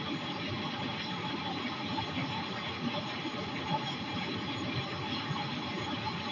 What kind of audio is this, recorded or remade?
recorded